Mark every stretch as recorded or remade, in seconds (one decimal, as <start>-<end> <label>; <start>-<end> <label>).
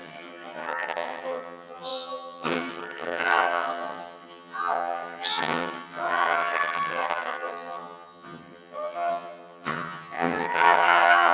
0.0-11.3 remade